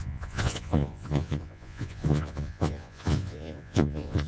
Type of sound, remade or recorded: remade